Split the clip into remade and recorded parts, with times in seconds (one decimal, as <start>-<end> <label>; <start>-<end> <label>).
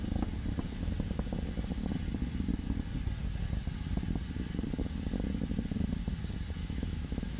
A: 0.0-6.6 recorded; 6.6-7.4 remade